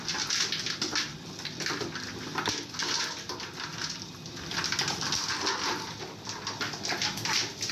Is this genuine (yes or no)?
yes